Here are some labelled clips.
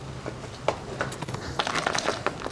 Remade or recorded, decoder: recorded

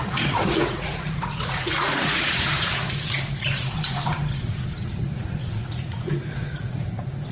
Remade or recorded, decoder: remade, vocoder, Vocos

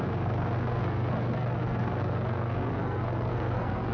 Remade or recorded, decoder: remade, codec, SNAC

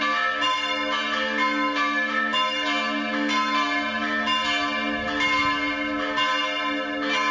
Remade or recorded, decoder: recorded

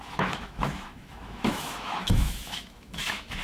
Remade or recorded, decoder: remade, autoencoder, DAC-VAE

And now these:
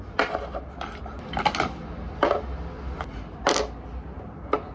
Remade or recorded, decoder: recorded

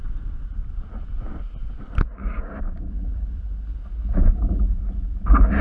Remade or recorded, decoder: recorded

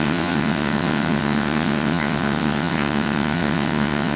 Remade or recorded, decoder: remade, vocoder, WaveNeXt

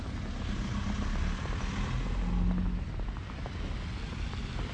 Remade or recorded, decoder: recorded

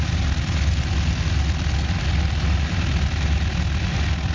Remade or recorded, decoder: recorded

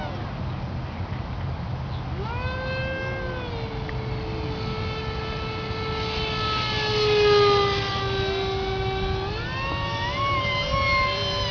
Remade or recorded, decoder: recorded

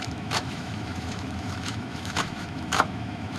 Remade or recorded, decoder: remade, autoencoder, DAC-VAE